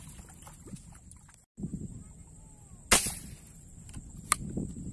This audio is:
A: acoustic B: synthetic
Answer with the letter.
A